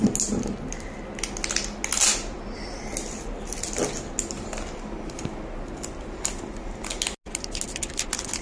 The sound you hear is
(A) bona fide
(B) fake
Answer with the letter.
A